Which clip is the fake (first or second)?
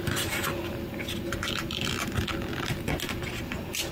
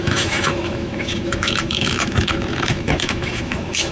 second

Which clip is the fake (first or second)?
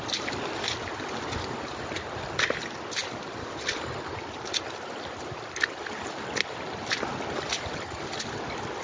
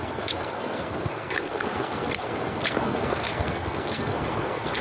second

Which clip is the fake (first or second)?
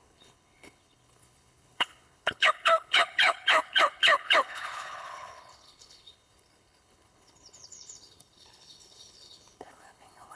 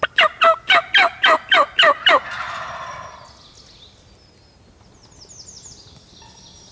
first